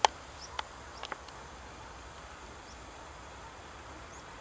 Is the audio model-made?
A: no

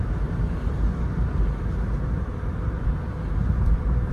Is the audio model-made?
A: no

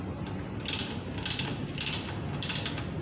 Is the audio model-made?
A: no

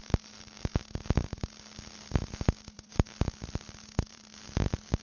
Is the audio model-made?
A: yes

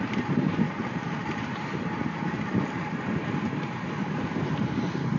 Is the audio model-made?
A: yes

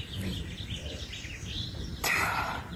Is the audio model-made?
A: yes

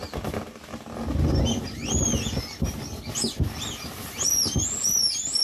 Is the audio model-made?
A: no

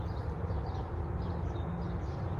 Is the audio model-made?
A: no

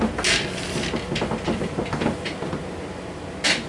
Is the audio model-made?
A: no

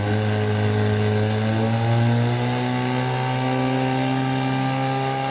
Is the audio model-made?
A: no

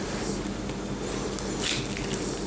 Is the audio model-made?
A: no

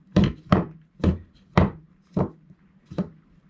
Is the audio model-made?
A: yes